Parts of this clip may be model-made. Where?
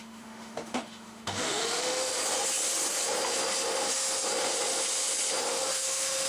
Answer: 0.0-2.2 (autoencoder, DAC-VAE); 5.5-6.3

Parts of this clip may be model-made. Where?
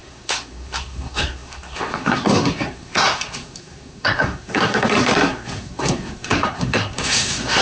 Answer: 0.0-7.6 (codec, SNAC)